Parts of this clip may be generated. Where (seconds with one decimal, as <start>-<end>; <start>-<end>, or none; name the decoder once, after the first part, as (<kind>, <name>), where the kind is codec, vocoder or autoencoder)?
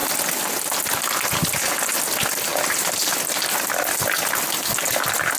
none